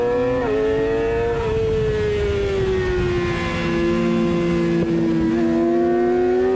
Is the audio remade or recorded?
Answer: recorded